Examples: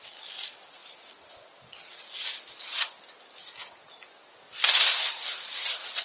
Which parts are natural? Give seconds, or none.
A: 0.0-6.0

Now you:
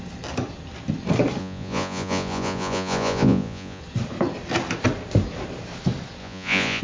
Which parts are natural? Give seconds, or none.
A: 0.0-1.4; 3.8-6.2